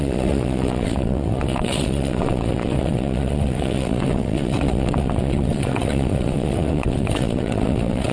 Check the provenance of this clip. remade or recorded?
remade